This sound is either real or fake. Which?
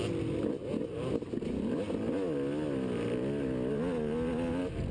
real